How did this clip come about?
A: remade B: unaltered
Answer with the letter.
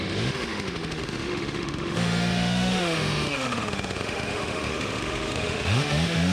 A